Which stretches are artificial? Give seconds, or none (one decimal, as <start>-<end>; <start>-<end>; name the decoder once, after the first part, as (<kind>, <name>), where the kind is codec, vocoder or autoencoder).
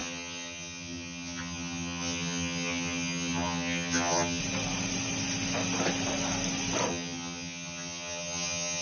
0.0-4.4 (vocoder, HiFi-GAN); 6.9-8.8